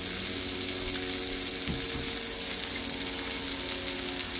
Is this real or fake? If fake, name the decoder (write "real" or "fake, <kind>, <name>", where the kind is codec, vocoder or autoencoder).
real